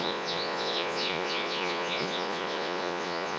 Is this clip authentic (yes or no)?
no